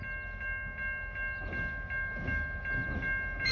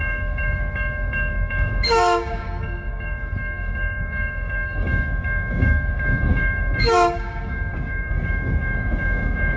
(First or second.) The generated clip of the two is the second